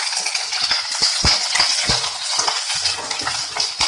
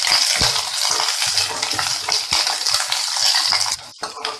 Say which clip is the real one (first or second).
second